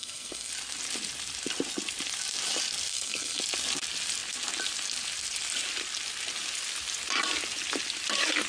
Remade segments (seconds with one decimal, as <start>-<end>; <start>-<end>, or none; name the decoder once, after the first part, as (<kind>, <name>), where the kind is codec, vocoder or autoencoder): 0.0-0.5 (codec, SNAC); 2.9-3.4